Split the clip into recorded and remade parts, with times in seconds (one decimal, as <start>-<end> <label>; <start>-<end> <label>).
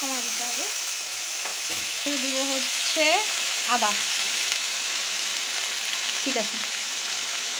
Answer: 0.0-5.3 remade; 5.3-5.9 recorded; 5.9-7.6 remade